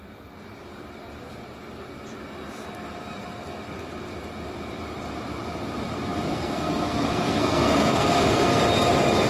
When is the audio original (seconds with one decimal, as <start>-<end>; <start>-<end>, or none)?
0.0-6.3; 8.6-9.3